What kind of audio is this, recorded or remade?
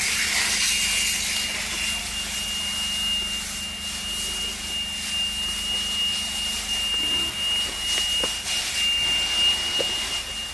recorded